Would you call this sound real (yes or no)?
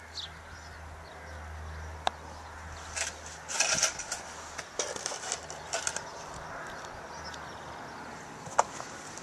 yes